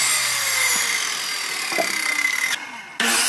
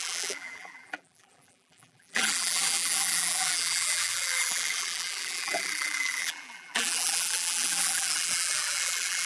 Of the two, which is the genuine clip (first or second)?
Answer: first